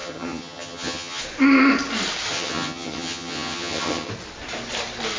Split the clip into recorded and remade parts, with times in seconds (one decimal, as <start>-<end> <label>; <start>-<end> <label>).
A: 0.0-1.2 remade; 1.2-2.3 recorded; 2.3-4.1 remade; 4.1-5.2 recorded